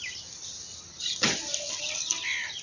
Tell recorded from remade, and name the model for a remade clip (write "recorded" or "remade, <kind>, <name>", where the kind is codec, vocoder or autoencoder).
recorded